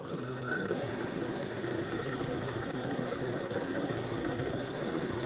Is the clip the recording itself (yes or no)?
no